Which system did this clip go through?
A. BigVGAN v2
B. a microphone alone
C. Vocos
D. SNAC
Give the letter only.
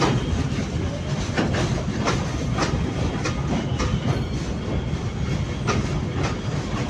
B